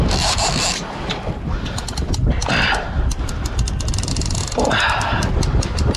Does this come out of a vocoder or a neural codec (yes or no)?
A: no